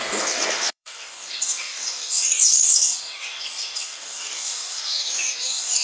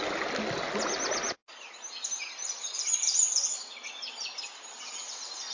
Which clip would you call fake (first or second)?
first